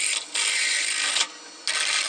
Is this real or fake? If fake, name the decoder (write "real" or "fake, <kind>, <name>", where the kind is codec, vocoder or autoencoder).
real